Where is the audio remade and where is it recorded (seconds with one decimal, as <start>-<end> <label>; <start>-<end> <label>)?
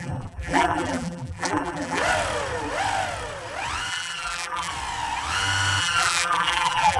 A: 0.0-2.0 remade; 2.0-3.9 recorded; 3.9-4.7 remade; 4.7-5.8 recorded; 5.8-7.0 remade